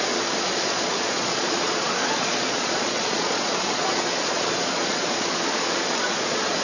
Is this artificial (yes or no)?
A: yes